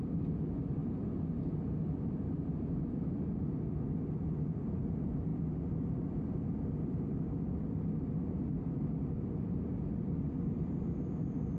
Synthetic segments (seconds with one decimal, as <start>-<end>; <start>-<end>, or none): none